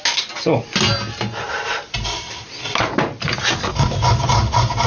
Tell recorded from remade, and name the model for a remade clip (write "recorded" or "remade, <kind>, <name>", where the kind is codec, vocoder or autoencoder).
recorded